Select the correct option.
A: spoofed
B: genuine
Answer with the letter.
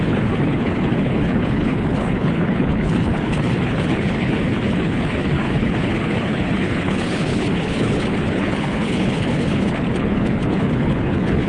A